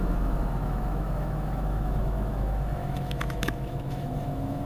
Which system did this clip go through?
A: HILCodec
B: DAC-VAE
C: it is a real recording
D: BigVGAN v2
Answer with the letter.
B